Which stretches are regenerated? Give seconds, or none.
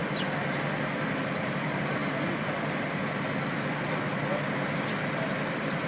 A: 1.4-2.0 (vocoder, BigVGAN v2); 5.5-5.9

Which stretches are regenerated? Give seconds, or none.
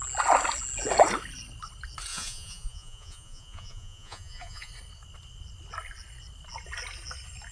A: 2.1-4.7 (vocoder, Vocos)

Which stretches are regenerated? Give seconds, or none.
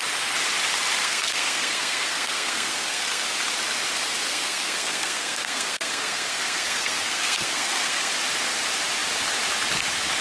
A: 1.0-3.2 (codec, SNAC); 4.3-8.1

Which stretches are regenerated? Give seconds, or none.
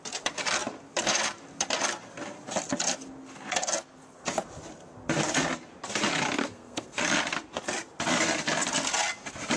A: 6.4-7.0 (codec, SNAC)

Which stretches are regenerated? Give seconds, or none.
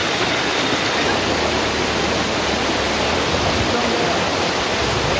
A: none